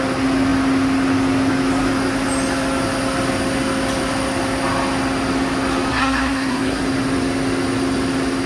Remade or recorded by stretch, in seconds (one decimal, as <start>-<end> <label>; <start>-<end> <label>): 0.0-5.9 recorded; 5.9-6.8 remade; 6.8-8.5 recorded